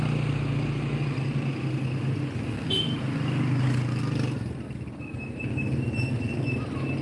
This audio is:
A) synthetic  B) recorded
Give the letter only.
B